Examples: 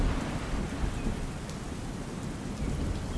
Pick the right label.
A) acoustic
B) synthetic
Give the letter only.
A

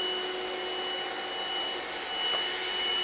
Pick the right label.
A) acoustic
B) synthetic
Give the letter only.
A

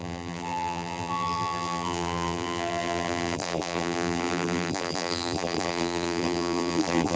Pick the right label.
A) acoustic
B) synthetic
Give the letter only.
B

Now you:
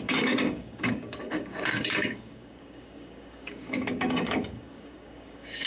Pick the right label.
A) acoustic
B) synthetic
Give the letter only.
B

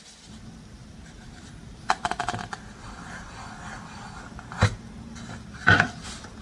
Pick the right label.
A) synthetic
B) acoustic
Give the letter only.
B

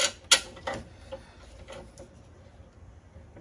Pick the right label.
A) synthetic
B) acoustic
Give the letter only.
B